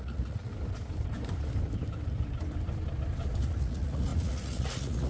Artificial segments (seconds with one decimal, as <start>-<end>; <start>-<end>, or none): 0.0-0.5; 3.6-5.1